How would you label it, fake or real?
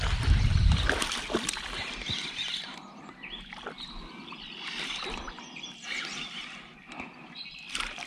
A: real